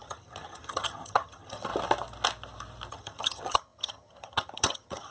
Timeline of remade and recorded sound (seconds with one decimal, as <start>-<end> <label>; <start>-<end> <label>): 0.0-1.7 remade; 1.7-2.9 recorded; 2.9-5.1 remade